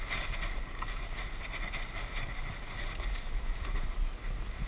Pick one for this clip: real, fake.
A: real